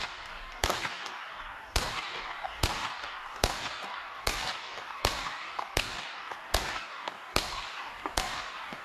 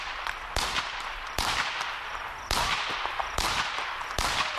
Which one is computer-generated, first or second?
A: first